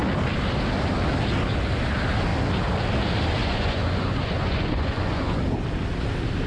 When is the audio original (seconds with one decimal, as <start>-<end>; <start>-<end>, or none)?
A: 0.0-3.4; 5.4-6.5